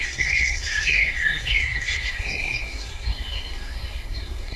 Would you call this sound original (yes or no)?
no